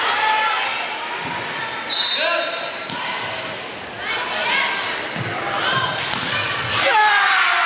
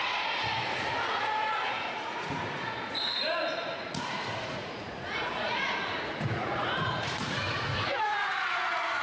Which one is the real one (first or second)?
first